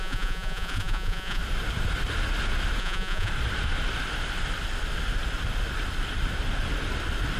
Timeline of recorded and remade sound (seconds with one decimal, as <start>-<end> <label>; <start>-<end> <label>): 0.0-1.4 remade; 1.4-2.8 recorded; 2.8-3.3 remade; 3.3-7.4 recorded